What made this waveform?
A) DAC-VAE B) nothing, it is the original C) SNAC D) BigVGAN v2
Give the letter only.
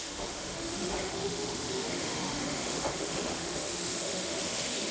A